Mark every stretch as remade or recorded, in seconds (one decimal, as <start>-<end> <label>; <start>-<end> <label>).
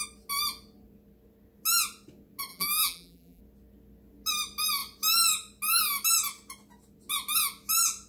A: 0.0-2.5 recorded; 2.5-3.4 remade; 3.4-8.1 recorded